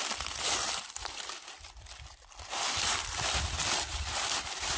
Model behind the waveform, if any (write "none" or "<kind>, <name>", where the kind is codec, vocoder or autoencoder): vocoder, BigVGAN v2